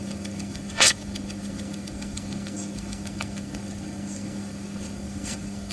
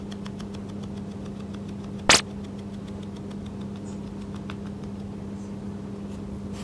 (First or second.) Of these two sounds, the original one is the second